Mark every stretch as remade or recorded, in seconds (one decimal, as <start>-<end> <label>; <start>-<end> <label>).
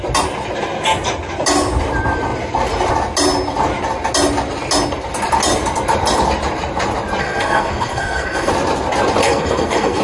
0.0-7.2 recorded; 7.2-8.5 remade; 8.5-9.2 recorded; 9.2-10.0 remade